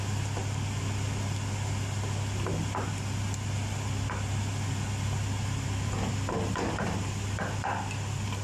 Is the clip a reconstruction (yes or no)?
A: no